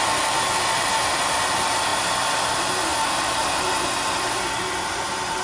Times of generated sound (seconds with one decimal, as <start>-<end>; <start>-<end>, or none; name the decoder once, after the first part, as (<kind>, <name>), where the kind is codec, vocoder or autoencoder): none